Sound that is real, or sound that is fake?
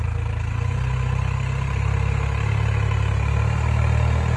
real